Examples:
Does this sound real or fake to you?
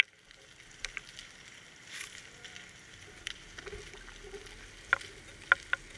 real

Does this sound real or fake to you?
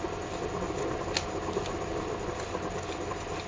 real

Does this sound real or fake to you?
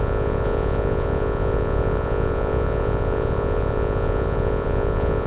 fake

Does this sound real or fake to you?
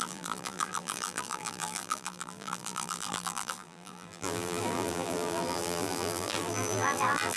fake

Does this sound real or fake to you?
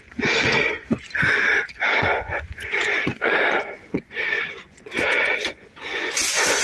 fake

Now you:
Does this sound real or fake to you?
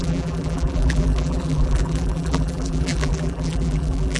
fake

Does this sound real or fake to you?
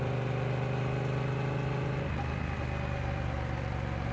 real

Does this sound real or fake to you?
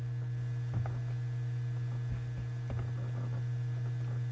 real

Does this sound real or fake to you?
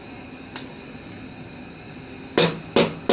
real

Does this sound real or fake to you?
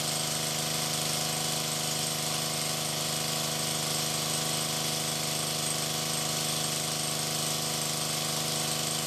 real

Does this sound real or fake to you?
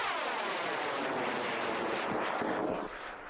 real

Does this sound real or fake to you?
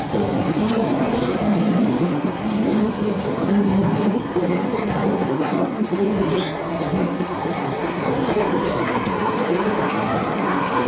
fake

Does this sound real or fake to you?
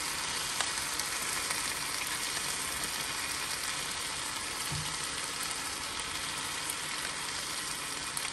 real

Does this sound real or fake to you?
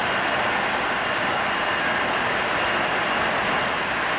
real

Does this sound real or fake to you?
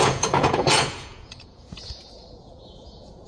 fake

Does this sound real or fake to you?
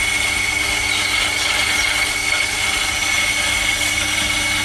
real